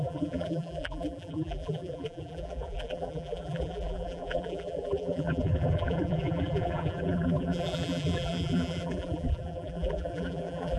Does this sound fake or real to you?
fake